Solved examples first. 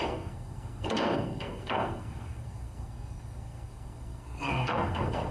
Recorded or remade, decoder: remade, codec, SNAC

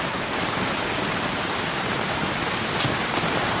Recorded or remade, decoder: recorded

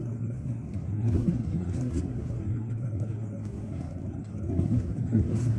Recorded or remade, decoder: remade, codec, SNAC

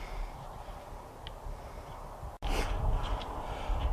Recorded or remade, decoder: recorded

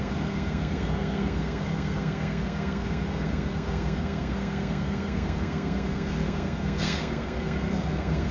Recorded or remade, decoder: remade, codec, SNAC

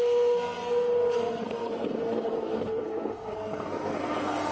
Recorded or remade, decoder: remade, codec, SNAC